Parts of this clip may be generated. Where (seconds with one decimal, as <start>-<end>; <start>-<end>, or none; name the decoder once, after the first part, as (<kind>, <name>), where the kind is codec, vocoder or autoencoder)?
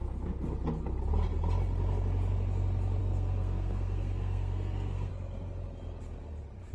3.0-5.1 (codec, SNAC)